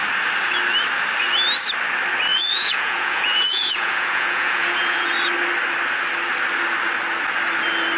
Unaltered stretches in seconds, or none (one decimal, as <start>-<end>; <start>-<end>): 0.0-2.3; 5.1-8.0